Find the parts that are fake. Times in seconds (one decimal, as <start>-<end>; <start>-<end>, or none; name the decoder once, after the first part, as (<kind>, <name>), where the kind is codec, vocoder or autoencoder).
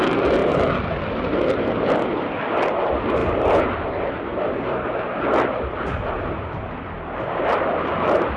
0.4-0.9 (vocoder, BigVGAN v2); 3.2-8.4